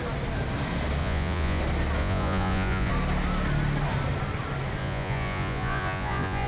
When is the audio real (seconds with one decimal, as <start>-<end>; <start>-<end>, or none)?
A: 0.0-1.0; 1.6-2.0; 2.9-4.8